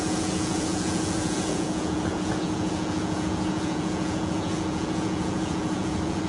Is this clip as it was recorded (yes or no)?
no